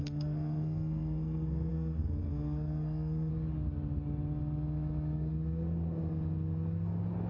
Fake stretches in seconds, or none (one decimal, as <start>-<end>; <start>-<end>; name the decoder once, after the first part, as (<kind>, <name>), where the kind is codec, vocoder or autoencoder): 0.0-3.3 (codec, SNAC)